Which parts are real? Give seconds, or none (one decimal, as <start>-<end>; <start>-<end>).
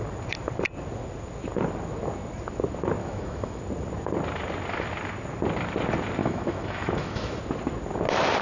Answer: 0.0-3.0; 3.6-6.2; 7.4-8.4